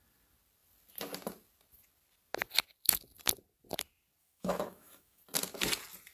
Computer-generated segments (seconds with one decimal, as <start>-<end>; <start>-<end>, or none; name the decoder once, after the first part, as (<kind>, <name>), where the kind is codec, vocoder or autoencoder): 4.2-5.2 (autoencoder, DAC-VAE)